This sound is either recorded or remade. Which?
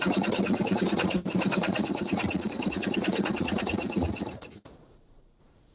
remade